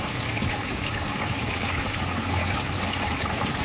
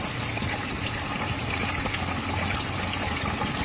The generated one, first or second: first